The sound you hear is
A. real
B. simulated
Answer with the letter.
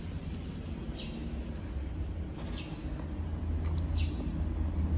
A